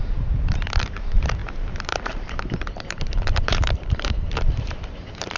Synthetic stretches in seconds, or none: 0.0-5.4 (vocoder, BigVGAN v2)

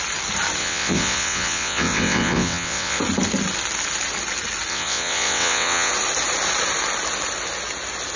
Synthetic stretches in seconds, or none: 0.6-3.0 (vocoder, WaveNeXt); 4.7-5.9